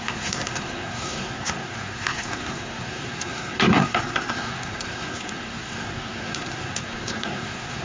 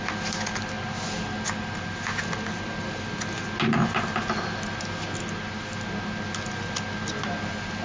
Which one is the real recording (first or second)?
second